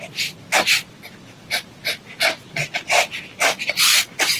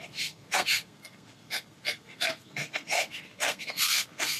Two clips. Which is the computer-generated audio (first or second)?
second